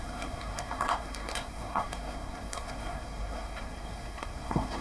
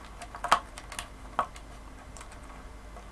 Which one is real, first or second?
second